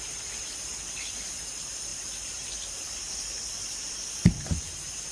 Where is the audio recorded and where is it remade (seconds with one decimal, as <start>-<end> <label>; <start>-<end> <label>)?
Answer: 0.0-1.9 recorded; 1.9-4.3 remade; 4.3-5.1 recorded